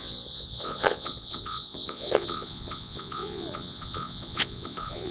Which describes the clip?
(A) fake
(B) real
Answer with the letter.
A